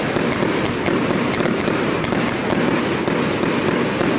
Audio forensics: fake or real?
real